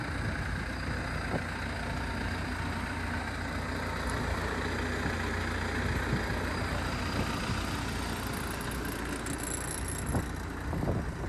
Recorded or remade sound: recorded